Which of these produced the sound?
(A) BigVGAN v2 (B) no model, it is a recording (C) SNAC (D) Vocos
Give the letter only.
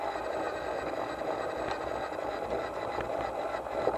B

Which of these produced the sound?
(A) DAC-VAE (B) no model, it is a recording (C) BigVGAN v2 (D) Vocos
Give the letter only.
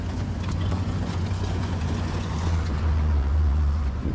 D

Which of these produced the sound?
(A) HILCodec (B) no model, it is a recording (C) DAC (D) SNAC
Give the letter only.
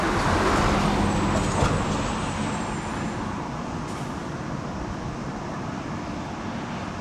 B